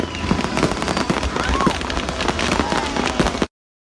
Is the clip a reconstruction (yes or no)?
no